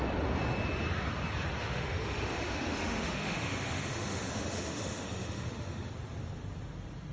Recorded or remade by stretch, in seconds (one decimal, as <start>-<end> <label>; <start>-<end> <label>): 0.0-1.6 recorded; 1.6-5.9 remade; 5.9-7.1 recorded